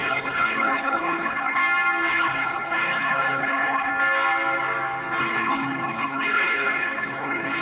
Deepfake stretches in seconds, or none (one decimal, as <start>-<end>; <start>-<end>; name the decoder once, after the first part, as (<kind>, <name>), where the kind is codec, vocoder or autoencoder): 0.0-1.6 (codec, HILCodec); 2.1-3.9; 5.2-7.6